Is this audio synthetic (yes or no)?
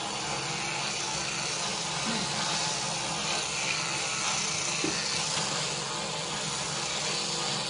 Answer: no